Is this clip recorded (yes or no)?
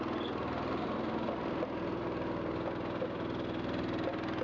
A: yes